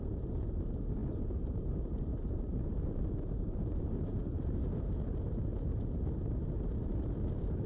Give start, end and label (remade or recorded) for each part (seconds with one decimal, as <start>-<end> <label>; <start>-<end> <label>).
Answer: 0.0-2.1 recorded; 2.1-4.6 remade; 4.6-7.7 recorded